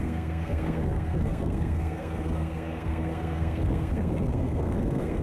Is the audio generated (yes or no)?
yes